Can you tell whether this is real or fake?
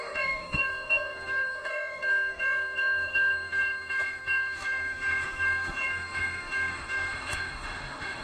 fake